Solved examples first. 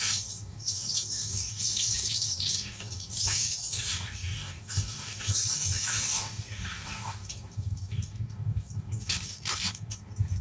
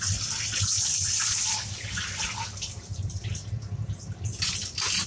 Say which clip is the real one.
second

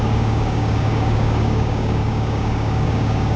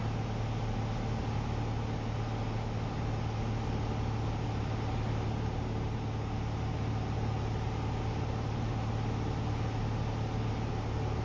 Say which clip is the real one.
second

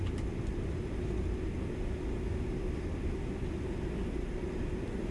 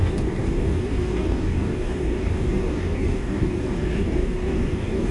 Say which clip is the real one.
first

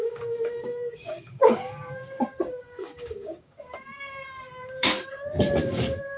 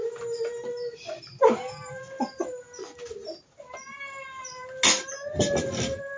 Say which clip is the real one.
second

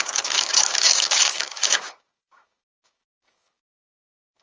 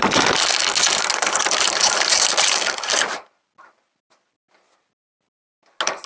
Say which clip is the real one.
second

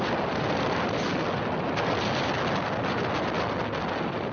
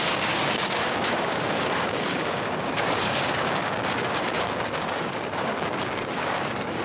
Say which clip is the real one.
first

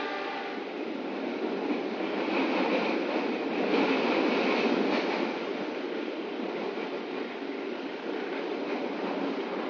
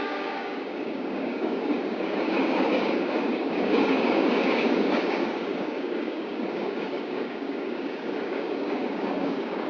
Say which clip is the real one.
first